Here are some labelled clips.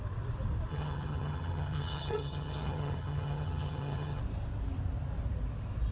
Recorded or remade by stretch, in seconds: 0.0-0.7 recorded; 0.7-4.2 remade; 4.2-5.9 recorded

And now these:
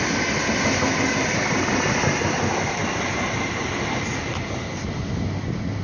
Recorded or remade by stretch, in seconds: 0.0-5.8 recorded

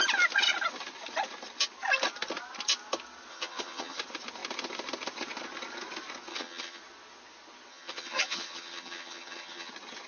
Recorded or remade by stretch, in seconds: 0.0-3.3 recorded; 3.3-4.0 remade; 4.0-6.3 recorded; 6.3-6.8 remade; 6.8-7.7 recorded; 7.7-9.7 remade; 9.7-10.1 recorded

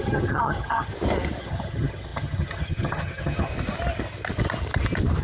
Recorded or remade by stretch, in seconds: 0.0-0.9 remade; 0.9-1.4 recorded; 1.4-3.5 remade; 3.5-5.2 recorded

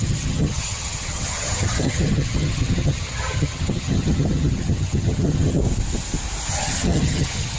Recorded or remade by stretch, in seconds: 0.0-5.6 remade; 5.6-6.5 recorded; 6.5-7.6 remade

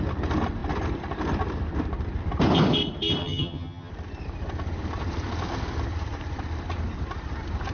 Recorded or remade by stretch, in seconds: 0.0-3.2 recorded; 3.2-3.9 remade; 3.9-7.7 recorded

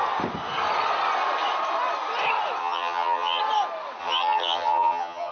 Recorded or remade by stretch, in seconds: 0.0-2.6 recorded; 2.6-3.4 remade; 3.4-4.0 recorded; 4.0-5.3 remade

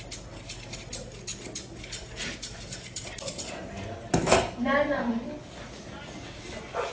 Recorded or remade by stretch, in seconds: 0.0-6.9 recorded